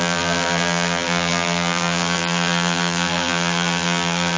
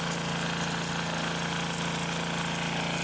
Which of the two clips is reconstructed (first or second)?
first